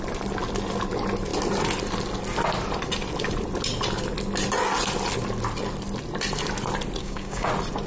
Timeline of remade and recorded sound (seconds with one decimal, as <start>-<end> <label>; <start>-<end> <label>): 0.0-7.0 recorded; 7.0-7.5 remade; 7.5-7.9 recorded